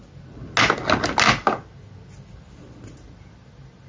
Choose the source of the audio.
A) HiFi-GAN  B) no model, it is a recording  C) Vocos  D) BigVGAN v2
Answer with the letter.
B